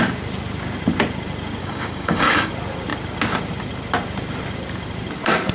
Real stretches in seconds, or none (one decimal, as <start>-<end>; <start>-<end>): 0.0-1.6; 2.5-5.5